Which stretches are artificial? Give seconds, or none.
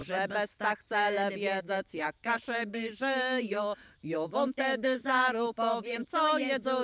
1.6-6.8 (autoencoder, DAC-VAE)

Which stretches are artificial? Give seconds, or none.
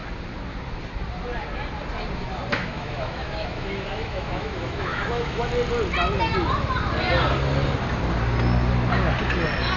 2.5-5.5 (autoencoder, DAC-VAE)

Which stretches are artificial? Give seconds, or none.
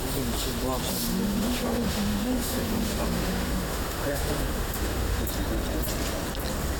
1.1-5.2 (autoencoder, DAC-VAE)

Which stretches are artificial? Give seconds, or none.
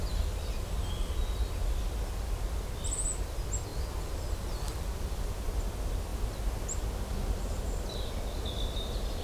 none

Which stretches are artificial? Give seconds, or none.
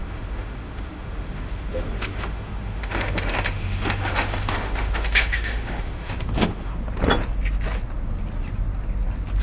0.0-6.7 (autoencoder, DAC-VAE)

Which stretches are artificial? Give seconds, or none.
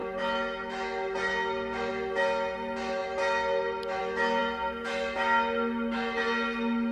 none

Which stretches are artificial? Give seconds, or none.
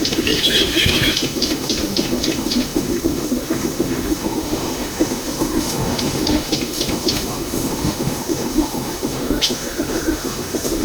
0.0-10.8 (autoencoder, DAC-VAE)